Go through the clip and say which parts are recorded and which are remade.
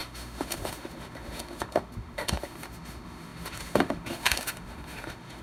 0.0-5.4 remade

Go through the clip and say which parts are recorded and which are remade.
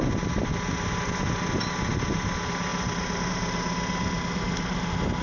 0.0-5.2 recorded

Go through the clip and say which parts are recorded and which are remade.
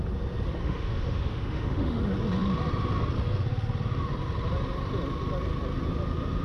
0.0-0.6 recorded; 0.6-2.0 remade; 2.0-6.4 recorded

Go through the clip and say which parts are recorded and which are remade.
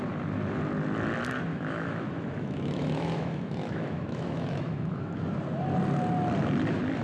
0.0-1.5 recorded; 1.5-5.2 remade; 5.2-7.0 recorded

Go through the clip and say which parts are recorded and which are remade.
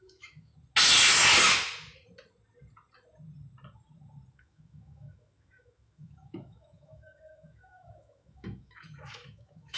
0.0-0.5 remade; 0.5-4.3 recorded; 4.3-9.8 remade